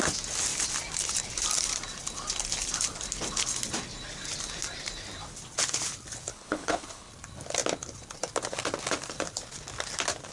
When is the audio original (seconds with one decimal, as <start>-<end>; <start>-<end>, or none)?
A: 0.0-6.3; 7.1-10.3